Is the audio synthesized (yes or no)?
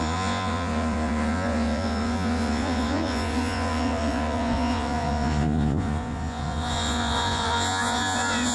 yes